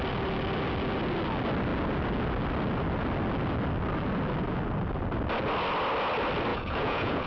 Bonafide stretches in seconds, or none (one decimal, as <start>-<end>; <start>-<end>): 0.0-6.5